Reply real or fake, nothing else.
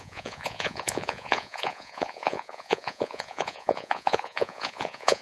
fake